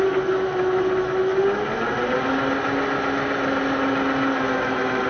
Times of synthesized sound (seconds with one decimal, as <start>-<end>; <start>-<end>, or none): none